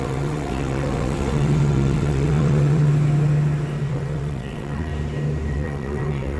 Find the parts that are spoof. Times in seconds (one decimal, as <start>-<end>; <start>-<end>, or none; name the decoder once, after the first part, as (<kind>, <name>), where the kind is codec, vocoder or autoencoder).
0.0-2.9 (vocoder, WaveNeXt); 3.8-4.9; 5.5-6.4